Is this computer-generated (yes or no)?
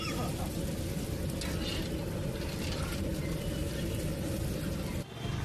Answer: no